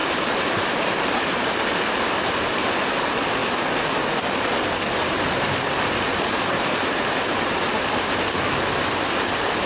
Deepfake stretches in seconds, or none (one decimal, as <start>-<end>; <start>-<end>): 0.0-1.4; 6.1-8.5